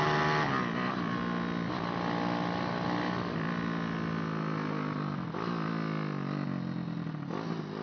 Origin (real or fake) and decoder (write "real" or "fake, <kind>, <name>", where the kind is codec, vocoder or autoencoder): real